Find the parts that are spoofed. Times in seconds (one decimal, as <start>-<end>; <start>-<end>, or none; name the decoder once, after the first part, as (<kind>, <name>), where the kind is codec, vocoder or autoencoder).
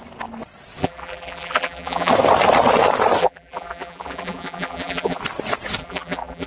0.8-2.1 (vocoder, BigVGAN v2); 3.2-5.2; 5.8-6.5